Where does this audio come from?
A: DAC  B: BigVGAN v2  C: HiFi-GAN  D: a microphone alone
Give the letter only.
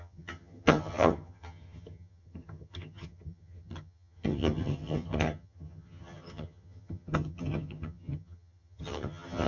C